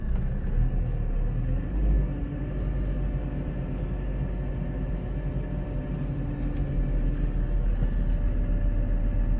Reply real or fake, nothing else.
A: real